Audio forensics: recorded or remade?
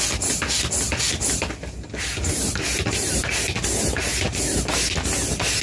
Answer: recorded